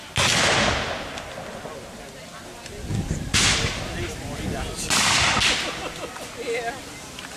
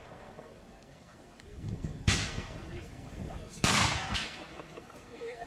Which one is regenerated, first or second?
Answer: second